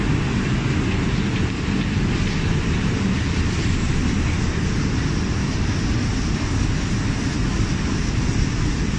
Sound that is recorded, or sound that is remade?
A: recorded